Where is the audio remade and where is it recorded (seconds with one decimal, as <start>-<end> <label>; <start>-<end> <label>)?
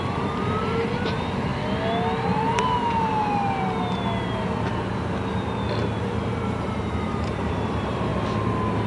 0.0-1.5 remade; 1.5-6.0 recorded; 6.0-8.1 remade; 8.1-8.9 recorded